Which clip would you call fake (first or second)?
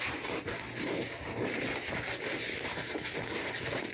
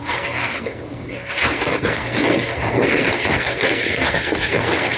second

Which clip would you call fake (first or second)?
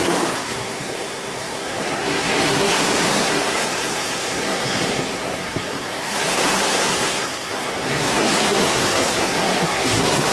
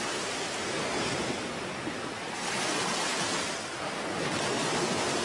first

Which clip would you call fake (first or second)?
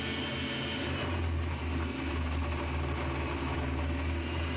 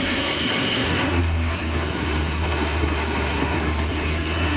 second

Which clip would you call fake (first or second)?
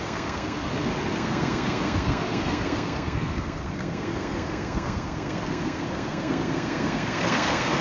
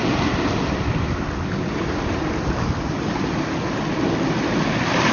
first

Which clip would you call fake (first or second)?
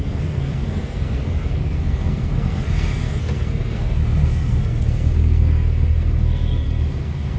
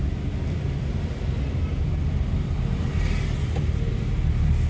first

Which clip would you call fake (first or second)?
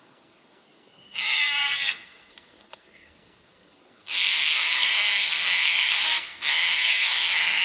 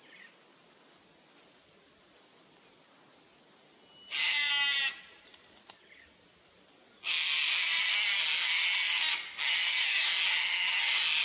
first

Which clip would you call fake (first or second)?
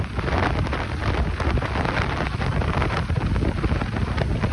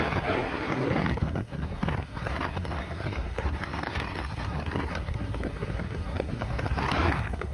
second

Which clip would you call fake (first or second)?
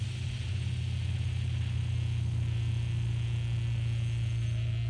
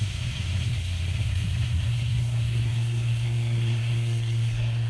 second